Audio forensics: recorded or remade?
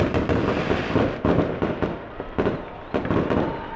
recorded